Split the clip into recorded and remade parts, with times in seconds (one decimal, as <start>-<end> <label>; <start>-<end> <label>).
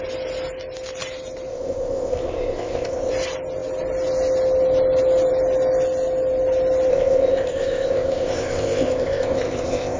0.0-1.5 recorded; 1.5-3.1 remade; 3.1-6.9 recorded; 6.9-10.0 remade